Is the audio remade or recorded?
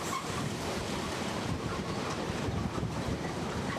remade